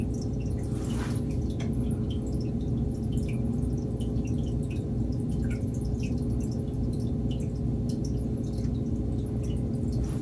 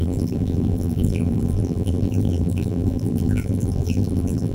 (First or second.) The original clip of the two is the first